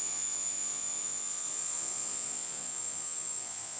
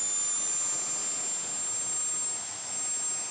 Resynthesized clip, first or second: first